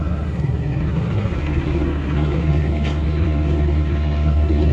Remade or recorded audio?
remade